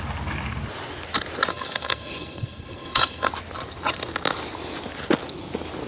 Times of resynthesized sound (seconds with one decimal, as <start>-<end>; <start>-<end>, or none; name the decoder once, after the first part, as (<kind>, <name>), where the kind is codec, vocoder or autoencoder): 1.5-3.3 (codec, SNAC)